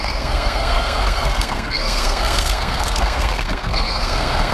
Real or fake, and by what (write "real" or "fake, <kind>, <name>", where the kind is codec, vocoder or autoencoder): fake, codec, SNAC